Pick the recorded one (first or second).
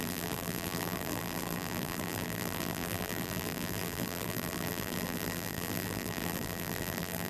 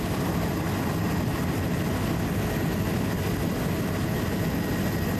second